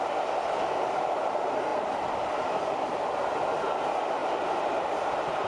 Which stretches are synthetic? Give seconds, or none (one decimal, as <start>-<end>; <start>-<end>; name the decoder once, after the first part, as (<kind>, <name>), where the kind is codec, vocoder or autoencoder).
none